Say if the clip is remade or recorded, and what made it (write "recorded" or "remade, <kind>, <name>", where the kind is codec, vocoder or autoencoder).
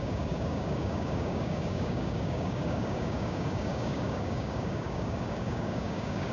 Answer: remade, codec, DAC